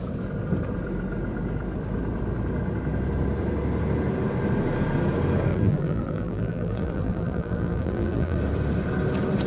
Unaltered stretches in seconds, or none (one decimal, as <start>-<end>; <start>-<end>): 0.0-5.5; 8.4-9.5